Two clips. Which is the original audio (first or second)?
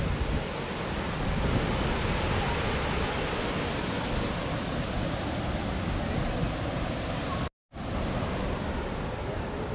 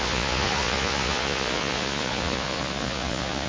first